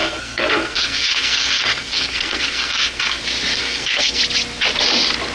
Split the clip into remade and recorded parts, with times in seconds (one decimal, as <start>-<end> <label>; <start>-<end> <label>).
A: 0.0-3.2 remade; 3.2-3.6 recorded; 3.6-4.2 remade; 4.2-5.3 recorded